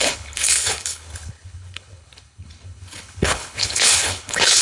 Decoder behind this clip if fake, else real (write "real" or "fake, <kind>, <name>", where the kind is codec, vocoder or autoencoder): fake, codec, HILCodec